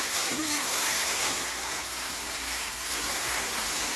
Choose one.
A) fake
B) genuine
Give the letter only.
A